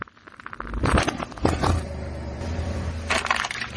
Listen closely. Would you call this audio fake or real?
real